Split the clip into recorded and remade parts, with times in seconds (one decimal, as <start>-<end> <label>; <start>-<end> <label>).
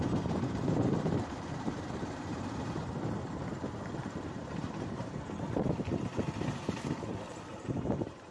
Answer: 0.0-3.4 remade; 3.4-4.3 recorded; 4.3-6.1 remade; 6.1-7.1 recorded; 7.1-8.3 remade